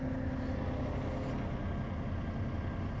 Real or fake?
real